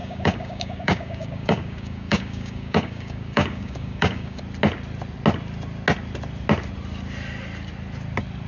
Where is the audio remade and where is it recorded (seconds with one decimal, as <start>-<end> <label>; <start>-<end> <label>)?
0.0-4.4 remade; 4.4-8.5 recorded